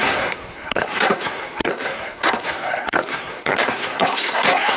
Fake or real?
fake